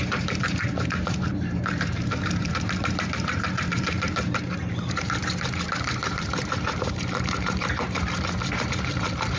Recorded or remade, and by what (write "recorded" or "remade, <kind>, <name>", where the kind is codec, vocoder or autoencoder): remade, vocoder, BigVGAN v2